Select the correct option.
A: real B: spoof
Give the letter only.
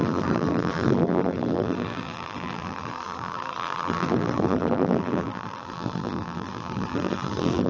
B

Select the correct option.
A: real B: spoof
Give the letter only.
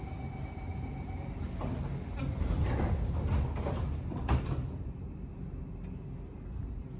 A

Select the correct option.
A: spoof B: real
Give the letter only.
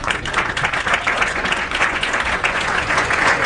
A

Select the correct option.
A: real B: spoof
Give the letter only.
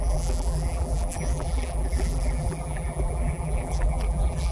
B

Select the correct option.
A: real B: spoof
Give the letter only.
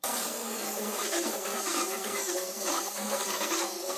B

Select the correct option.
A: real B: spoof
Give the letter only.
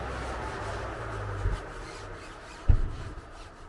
A